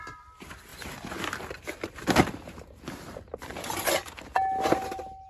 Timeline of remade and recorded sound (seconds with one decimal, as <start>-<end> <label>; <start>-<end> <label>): 0.0-5.3 recorded